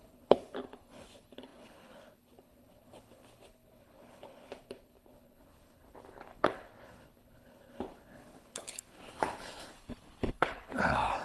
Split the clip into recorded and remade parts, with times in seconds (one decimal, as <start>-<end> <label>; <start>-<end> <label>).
0.0-11.2 remade